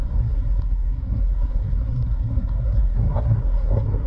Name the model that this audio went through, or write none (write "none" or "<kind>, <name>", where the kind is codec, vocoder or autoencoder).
codec, SNAC